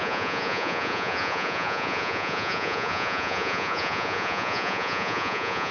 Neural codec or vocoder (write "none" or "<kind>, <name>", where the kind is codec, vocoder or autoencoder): vocoder, Vocos